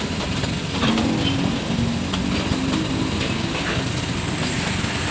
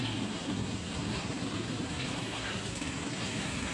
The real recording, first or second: first